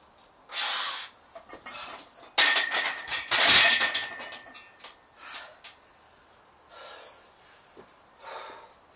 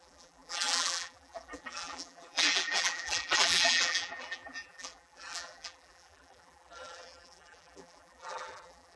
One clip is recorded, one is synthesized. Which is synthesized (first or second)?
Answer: second